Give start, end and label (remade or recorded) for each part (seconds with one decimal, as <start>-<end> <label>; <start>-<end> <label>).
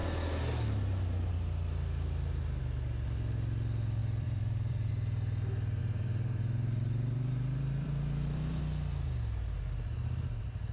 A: 0.0-4.0 recorded; 4.0-4.9 remade; 4.9-5.8 recorded; 5.8-8.6 remade; 8.6-10.7 recorded